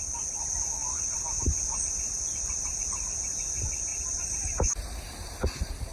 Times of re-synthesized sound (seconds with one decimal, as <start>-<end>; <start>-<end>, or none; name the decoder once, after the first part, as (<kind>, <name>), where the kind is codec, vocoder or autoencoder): none